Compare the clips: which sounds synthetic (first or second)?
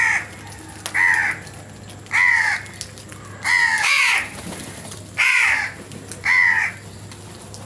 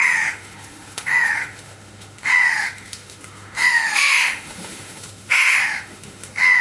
second